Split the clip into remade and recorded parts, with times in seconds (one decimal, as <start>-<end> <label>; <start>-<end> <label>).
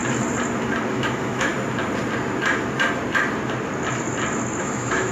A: 0.0-0.9 recorded; 0.9-1.5 remade; 1.5-4.6 recorded; 4.6-5.1 remade